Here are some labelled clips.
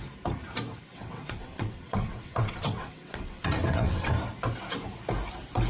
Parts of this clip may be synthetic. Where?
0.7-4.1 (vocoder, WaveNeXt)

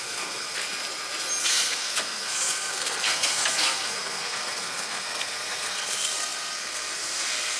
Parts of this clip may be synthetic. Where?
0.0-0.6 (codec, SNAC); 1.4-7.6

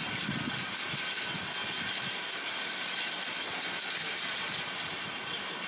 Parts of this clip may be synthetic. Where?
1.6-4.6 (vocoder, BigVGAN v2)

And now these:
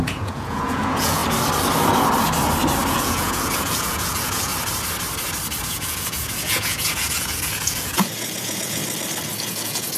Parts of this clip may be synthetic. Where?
0.0-1.2 (vocoder, Vocos); 2.9-4.5; 5.6-8.8; 9.3-10.0

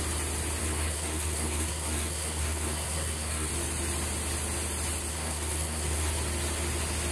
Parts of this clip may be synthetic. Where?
0.6-3.5 (codec, SNAC); 5.1-6.1

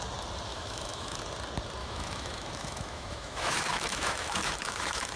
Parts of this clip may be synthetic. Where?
0.5-1.2 (autoencoder, DAC-VAE); 1.8-5.2